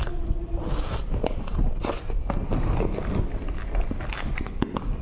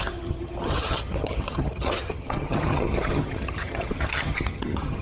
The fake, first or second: second